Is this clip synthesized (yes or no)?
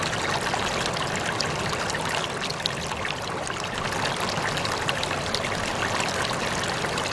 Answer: no